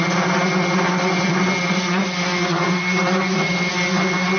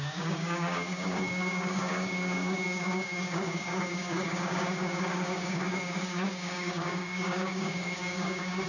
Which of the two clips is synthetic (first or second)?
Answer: second